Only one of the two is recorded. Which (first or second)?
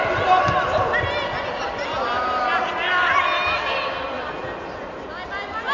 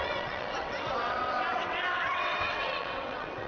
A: first